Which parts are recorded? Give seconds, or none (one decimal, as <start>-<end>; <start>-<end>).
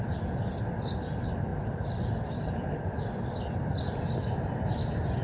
0.0-5.2